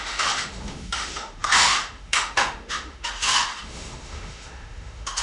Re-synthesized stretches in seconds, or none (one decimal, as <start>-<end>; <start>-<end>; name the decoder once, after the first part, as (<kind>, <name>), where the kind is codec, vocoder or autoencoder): 0.0-5.2 (autoencoder, DAC-VAE)